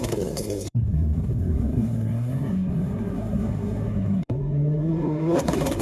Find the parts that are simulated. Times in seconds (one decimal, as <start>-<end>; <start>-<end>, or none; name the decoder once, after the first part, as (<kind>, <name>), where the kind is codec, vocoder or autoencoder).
0.0-5.8 (codec, SNAC)